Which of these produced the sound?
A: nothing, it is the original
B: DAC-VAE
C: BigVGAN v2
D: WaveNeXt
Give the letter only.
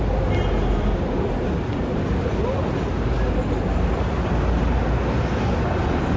A